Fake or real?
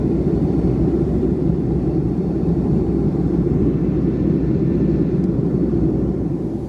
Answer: fake